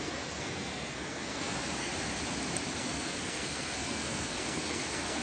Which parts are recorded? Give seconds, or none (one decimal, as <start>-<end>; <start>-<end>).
1.9-2.8